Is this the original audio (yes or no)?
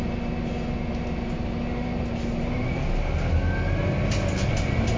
yes